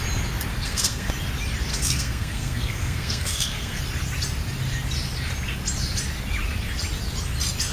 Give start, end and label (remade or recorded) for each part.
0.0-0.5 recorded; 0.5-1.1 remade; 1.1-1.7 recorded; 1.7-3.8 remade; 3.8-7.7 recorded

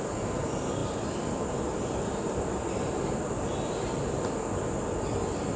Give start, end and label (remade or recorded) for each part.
0.0-5.6 recorded

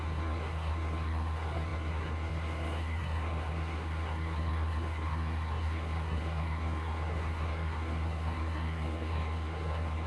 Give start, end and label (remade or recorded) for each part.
0.0-10.1 remade